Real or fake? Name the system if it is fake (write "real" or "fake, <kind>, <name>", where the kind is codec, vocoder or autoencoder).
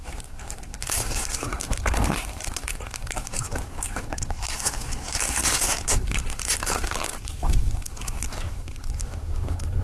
fake, codec, SNAC